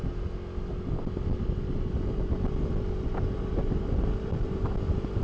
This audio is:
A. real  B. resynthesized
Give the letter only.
A